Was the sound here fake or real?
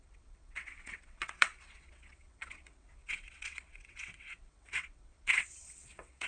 fake